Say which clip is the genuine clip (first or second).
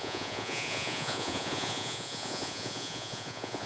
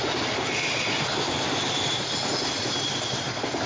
second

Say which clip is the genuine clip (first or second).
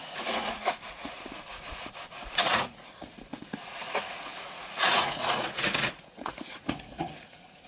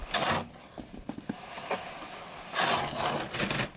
second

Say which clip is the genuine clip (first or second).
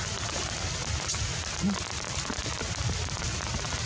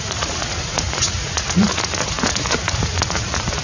first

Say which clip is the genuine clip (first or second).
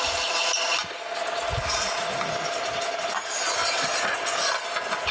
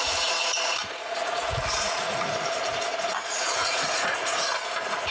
first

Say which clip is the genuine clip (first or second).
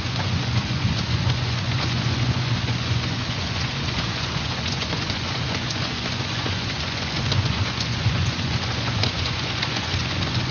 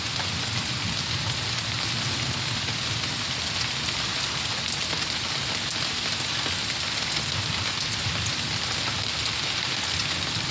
second